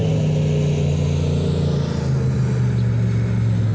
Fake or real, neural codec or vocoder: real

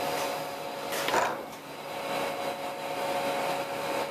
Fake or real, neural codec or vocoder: real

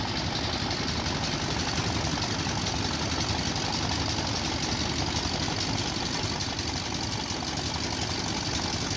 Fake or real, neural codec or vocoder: real